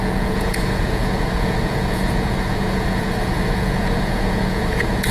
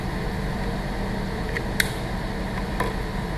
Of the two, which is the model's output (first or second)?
first